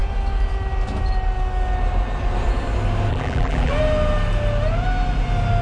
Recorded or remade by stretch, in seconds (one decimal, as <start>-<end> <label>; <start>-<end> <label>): 0.0-3.1 recorded; 3.1-3.7 remade; 3.7-5.6 recorded